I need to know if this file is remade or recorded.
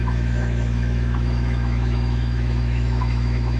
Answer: remade